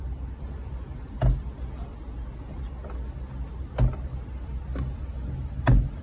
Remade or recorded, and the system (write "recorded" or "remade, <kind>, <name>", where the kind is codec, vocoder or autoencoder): recorded